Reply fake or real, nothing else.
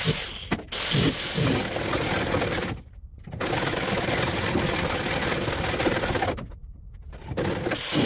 real